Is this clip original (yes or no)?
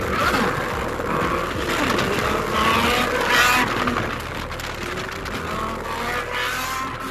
yes